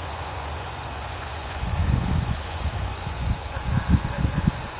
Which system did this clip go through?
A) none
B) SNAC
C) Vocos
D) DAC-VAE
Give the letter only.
C